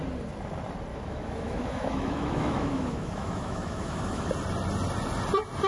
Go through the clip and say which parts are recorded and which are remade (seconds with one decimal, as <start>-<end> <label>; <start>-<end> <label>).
0.0-0.9 recorded; 0.9-4.3 remade; 4.3-5.7 recorded